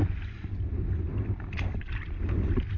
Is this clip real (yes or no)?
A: yes